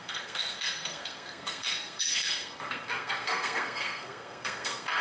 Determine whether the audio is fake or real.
fake